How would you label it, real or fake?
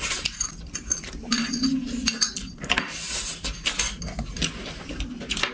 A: real